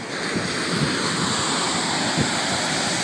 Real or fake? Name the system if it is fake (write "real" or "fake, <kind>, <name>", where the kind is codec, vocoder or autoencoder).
real